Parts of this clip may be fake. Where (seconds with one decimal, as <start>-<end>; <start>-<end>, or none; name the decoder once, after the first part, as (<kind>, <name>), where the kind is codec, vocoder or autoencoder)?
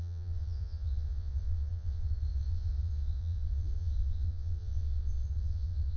0.0-6.0 (vocoder, Vocos)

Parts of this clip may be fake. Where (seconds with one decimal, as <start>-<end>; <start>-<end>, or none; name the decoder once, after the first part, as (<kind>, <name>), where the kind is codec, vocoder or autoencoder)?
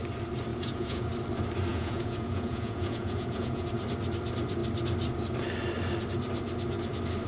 0.5-1.1 (vocoder, Vocos); 1.7-3.7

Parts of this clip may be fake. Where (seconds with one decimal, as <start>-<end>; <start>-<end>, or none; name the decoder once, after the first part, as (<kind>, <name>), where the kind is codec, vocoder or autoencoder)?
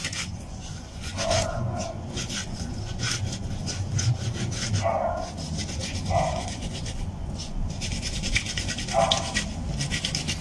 0.0-4.7 (vocoder, Vocos); 5.8-8.7